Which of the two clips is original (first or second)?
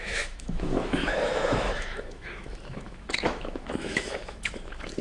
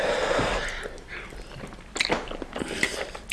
second